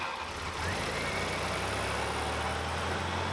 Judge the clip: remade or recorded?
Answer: recorded